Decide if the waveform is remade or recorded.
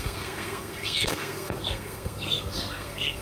remade